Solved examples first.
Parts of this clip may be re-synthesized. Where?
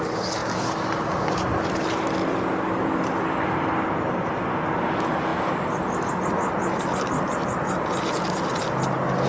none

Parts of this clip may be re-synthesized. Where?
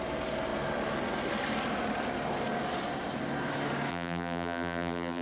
3.9-5.2 (vocoder, BigVGAN v2)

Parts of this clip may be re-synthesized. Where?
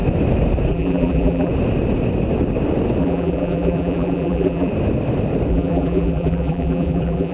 0.7-1.5 (vocoder, BigVGAN v2); 3.0-4.7; 5.5-7.3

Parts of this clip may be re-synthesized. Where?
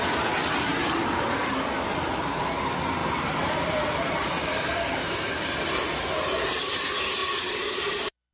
3.0-6.6 (vocoder, BigVGAN v2); 7.2-8.3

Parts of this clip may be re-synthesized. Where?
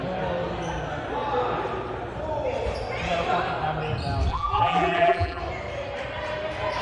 4.3-5.4 (vocoder, BigVGAN v2)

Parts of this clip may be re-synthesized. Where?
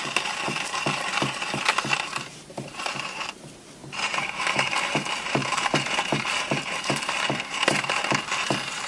0.0-8.9 (vocoder, BigVGAN v2)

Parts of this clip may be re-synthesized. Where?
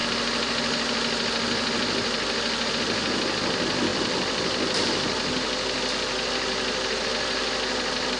3.9-7.0 (vocoder, BigVGAN v2)